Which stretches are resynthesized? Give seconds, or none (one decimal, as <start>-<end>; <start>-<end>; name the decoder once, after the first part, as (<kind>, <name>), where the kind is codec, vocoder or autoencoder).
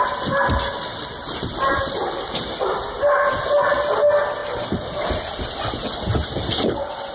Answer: 0.9-2.8 (vocoder, BigVGAN v2); 4.4-5.4